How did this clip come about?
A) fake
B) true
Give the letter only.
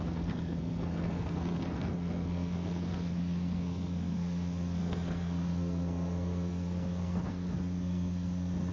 A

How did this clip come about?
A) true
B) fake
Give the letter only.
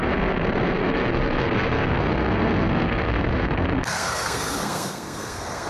B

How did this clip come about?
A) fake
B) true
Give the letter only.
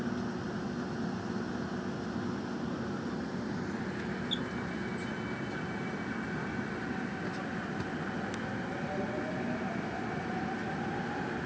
B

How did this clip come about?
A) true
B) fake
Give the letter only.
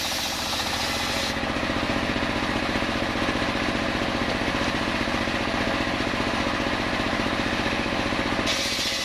A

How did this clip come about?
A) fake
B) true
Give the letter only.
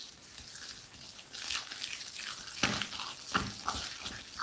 B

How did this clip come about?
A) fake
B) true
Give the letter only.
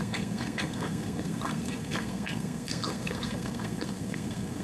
A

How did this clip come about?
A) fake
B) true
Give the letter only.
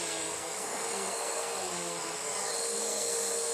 A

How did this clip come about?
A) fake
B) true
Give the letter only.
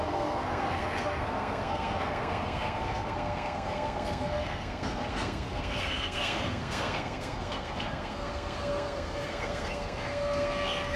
A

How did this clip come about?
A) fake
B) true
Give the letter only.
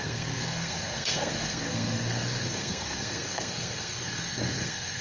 A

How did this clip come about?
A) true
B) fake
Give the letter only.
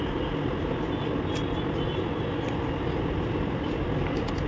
A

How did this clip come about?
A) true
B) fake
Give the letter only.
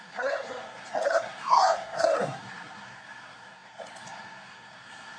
B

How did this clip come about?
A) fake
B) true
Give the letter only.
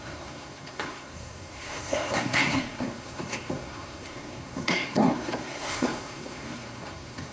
A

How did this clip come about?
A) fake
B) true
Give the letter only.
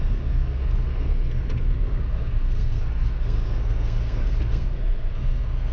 A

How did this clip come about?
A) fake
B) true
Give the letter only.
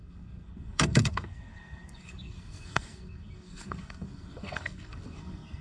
A